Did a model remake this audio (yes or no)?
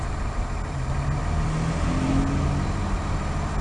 no